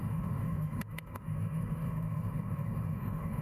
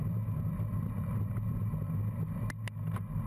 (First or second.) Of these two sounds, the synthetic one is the first